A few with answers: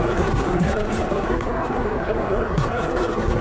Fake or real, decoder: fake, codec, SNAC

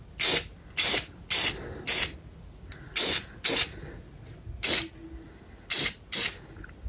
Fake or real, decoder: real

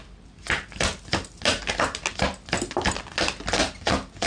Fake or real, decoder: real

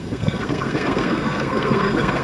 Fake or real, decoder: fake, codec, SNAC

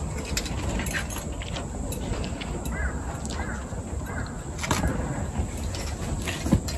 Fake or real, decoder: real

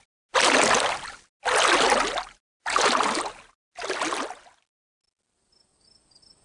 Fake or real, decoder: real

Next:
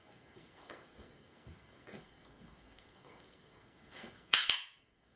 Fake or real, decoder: fake, codec, SNAC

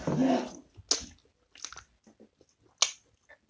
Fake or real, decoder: real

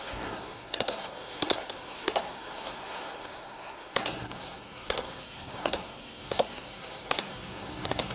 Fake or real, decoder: fake, codec, SNAC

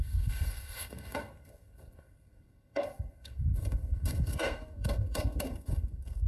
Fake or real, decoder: fake, codec, SNAC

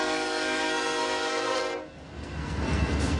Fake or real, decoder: fake, codec, SNAC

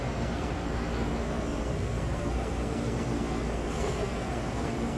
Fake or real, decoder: fake, codec, SNAC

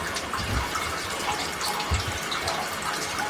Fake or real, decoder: real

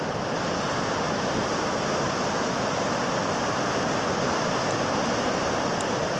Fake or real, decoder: real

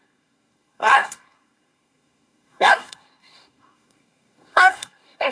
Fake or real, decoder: fake, codec, SNAC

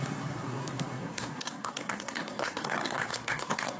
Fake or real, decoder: fake, codec, SNAC